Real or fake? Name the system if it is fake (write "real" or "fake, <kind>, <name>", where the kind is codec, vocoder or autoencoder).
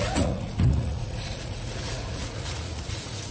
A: fake, vocoder, Vocos